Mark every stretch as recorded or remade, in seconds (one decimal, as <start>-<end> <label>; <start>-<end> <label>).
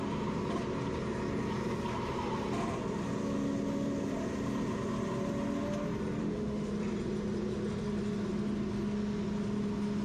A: 0.0-6.2 recorded; 6.2-6.7 remade; 6.7-10.0 recorded